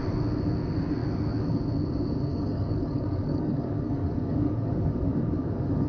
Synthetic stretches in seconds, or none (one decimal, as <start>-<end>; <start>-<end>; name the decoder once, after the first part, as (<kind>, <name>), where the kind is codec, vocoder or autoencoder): 2.3-5.9 (codec, DAC)